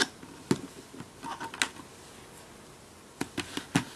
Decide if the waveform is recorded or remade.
recorded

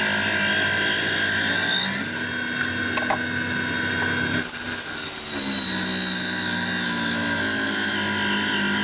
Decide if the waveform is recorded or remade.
recorded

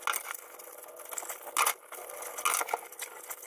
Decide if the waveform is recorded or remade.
recorded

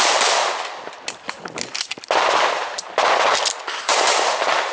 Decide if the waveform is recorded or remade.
recorded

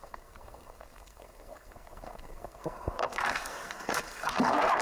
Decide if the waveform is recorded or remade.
remade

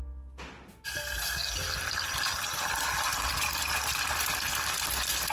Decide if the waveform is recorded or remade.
recorded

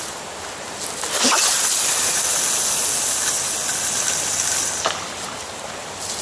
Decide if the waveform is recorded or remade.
recorded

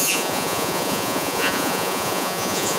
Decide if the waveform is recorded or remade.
remade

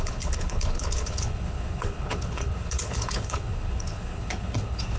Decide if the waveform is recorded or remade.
remade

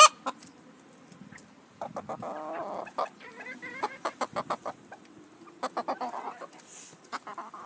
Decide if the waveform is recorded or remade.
recorded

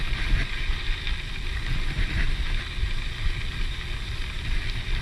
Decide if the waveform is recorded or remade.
recorded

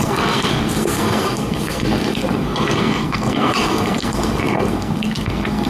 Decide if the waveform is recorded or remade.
remade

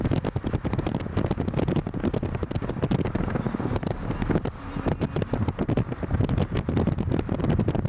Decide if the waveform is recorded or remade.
recorded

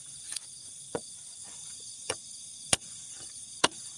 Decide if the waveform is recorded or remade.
remade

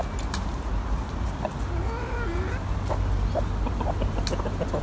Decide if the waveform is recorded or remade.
recorded